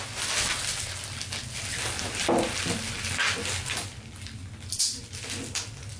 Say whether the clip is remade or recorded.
recorded